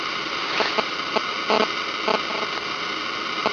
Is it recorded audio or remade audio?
recorded